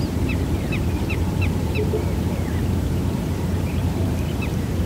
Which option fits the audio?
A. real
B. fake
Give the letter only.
B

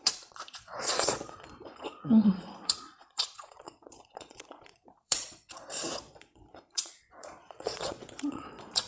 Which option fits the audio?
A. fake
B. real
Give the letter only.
A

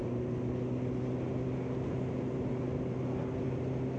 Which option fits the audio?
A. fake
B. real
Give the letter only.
B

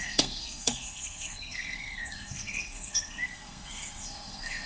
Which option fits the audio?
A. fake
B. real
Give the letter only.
A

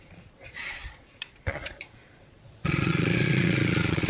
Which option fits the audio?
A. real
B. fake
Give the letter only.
B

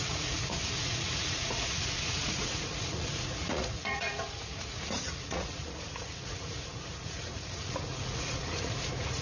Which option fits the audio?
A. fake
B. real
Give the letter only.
A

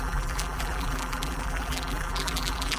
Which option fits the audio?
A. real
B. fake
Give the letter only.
B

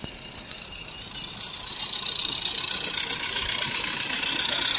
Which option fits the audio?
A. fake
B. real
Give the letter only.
B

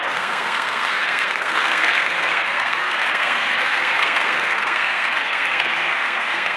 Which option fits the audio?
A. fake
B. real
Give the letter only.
A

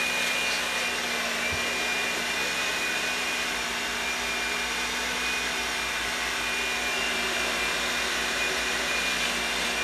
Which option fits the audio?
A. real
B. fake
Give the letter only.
A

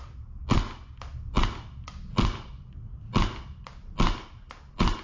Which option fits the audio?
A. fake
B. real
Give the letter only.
B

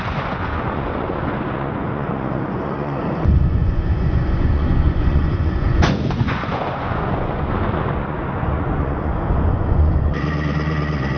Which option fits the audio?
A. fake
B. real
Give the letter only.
A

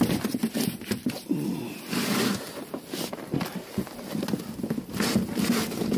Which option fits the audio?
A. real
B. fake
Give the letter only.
A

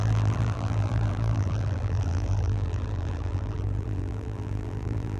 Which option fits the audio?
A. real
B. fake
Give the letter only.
B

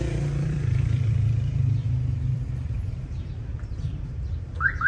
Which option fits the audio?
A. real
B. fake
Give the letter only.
B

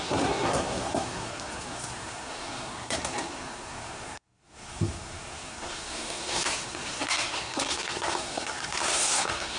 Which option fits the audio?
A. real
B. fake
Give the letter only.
B